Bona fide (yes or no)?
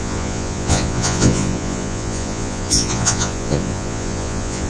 no